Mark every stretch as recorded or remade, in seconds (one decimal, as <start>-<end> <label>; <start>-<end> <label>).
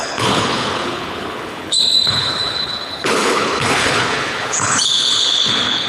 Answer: 0.0-5.9 remade